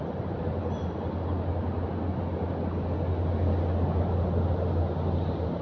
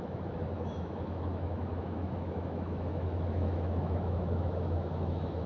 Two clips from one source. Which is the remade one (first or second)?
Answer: second